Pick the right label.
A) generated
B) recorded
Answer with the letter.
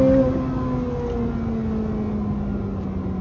B